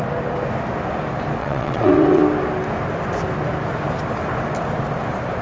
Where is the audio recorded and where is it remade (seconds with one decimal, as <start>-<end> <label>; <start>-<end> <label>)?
0.0-1.4 recorded; 1.4-2.2 remade; 2.2-5.4 recorded